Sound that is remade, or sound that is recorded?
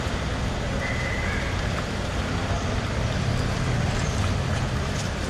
recorded